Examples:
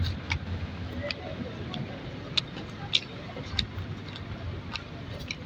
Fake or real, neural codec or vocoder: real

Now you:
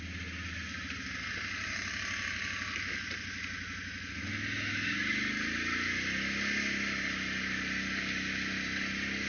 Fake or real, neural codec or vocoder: real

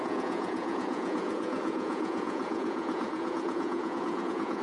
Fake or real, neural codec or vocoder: fake, vocoder, Vocos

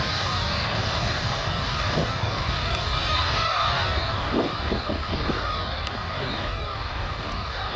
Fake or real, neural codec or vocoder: fake, codec, DAC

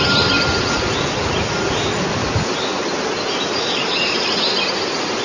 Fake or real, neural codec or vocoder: real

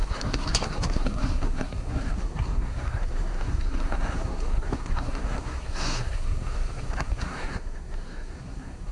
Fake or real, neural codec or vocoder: fake, codec, SNAC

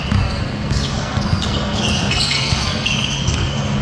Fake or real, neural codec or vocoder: fake, codec, SNAC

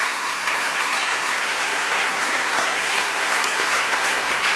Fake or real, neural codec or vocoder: fake, codec, SNAC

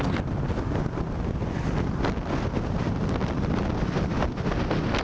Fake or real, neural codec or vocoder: real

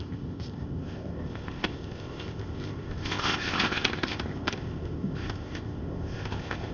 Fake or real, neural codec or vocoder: fake, codec, ZipCodec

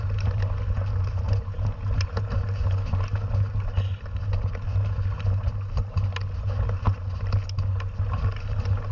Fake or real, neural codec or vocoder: real